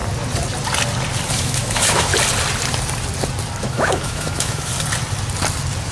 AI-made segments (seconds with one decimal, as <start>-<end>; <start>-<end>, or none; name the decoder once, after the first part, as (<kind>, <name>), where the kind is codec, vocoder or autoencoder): 1.3-2.1 (autoencoder, DAC-VAE); 3.6-4.7